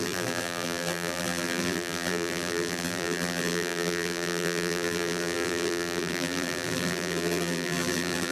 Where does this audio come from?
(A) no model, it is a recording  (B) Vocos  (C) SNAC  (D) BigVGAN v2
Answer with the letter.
D